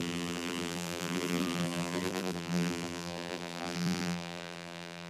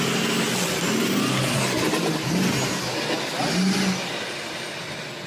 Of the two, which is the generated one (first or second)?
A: first